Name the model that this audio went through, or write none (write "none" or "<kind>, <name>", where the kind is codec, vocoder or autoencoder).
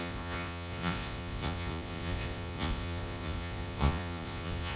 vocoder, Vocos